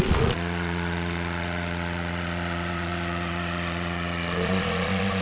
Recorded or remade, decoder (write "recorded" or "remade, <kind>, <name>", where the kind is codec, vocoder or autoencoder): remade, vocoder, Vocos